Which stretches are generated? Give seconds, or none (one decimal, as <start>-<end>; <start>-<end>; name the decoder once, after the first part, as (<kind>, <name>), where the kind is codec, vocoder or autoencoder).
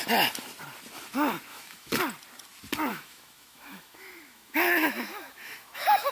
1.5-2.0 (autoencoder, DAC-VAE); 2.9-6.1